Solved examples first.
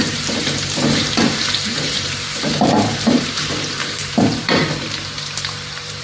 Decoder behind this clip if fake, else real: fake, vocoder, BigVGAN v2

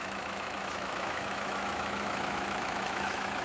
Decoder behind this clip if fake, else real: fake, autoencoder, DAC-VAE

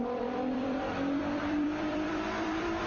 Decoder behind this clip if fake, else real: fake, vocoder, BigVGAN v2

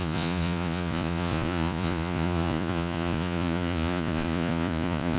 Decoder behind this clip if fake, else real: fake, vocoder, Vocos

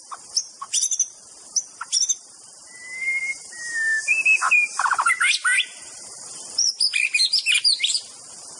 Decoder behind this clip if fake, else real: real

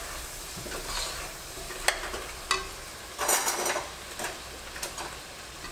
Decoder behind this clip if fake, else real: real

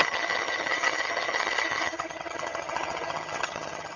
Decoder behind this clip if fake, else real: fake, vocoder, HiFi-GAN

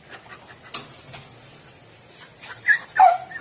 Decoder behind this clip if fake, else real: real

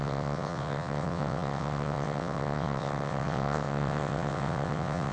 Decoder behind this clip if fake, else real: fake, vocoder, WaveNeXt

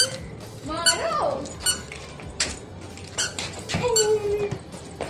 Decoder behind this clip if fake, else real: real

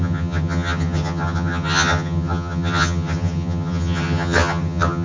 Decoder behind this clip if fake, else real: fake, vocoder, HiFi-GAN